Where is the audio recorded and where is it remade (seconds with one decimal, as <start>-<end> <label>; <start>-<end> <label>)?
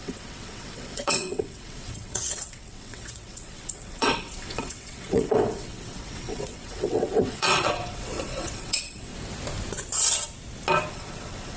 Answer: 0.0-9.1 remade; 9.1-10.9 recorded; 10.9-11.6 remade